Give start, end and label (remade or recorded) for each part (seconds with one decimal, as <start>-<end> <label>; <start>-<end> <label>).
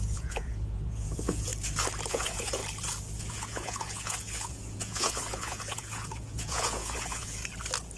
0.0-1.5 remade; 1.5-2.1 recorded; 2.1-2.6 remade; 2.6-3.2 recorded; 3.2-7.4 remade; 7.4-8.0 recorded